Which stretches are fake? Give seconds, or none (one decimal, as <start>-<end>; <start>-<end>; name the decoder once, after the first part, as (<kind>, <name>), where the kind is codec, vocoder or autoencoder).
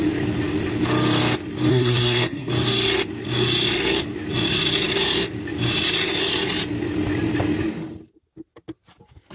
1.7-2.5 (codec, SNAC)